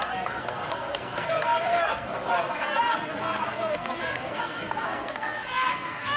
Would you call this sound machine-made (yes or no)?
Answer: yes